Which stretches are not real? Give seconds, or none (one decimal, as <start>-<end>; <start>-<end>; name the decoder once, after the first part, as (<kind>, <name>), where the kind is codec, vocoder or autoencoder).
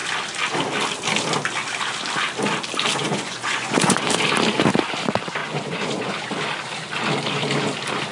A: 3.0-4.0 (vocoder, Vocos); 5.4-6.1